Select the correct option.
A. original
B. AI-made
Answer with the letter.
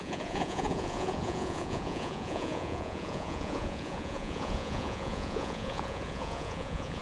B